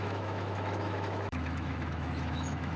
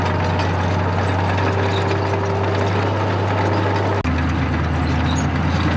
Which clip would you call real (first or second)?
second